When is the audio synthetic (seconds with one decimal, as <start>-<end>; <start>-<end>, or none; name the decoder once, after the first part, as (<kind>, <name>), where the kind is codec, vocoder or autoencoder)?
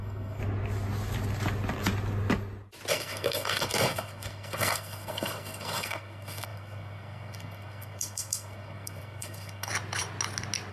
0.0-0.4 (codec, SNAC); 2.9-9.7